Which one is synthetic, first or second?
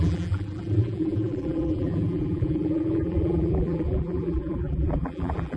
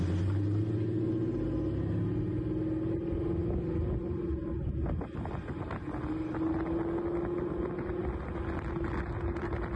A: first